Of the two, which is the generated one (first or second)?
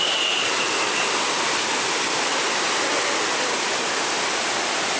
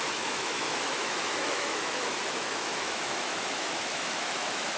second